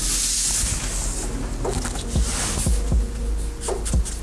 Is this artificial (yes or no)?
no